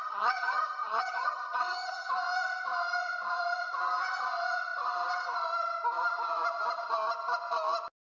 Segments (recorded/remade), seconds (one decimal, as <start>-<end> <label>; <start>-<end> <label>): 0.0-2.1 remade; 2.1-8.1 recorded